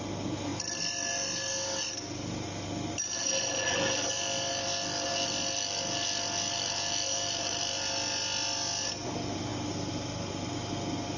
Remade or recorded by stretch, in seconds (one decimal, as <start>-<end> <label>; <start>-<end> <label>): 0.0-11.2 recorded